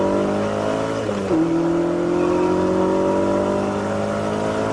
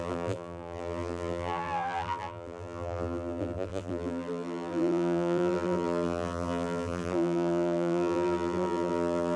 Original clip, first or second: first